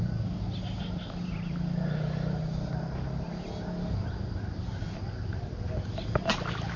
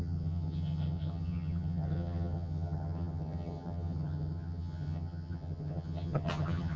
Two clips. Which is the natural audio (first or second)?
first